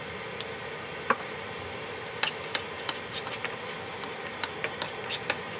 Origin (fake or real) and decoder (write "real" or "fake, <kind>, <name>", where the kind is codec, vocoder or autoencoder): real